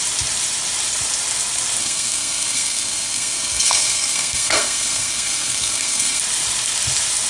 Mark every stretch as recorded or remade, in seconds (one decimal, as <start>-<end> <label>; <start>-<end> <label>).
0.0-1.8 recorded; 1.8-6.2 remade; 6.2-7.3 recorded